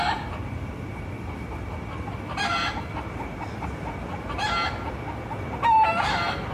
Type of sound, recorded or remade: recorded